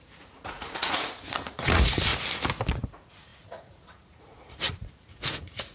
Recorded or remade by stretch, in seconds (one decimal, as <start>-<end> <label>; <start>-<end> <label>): 0.0-2.1 remade; 2.1-2.7 recorded; 2.7-5.7 remade